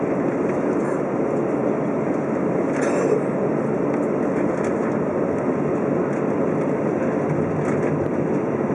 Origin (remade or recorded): recorded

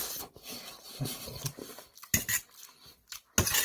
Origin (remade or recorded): recorded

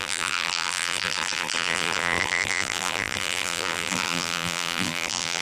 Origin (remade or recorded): remade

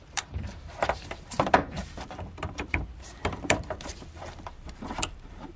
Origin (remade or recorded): remade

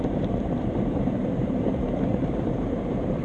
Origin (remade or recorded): remade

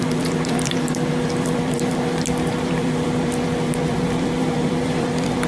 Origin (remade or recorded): remade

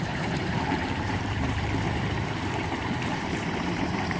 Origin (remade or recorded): remade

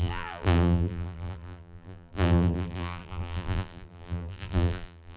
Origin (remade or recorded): remade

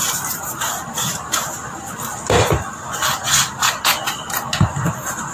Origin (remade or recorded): recorded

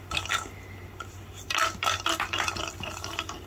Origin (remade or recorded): recorded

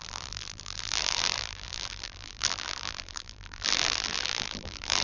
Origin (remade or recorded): remade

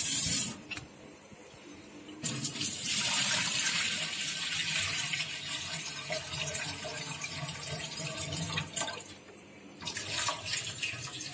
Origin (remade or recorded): remade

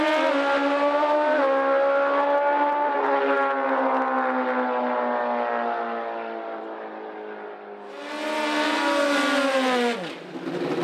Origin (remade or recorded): recorded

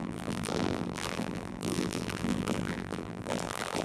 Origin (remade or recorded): remade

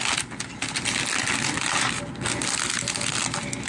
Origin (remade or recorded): recorded